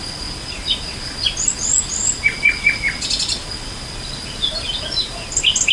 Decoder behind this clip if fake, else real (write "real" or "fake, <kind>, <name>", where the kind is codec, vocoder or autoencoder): real